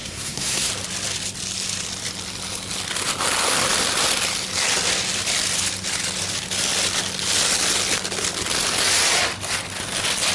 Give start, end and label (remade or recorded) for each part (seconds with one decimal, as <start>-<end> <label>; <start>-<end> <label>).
0.0-0.7 remade; 0.7-10.3 recorded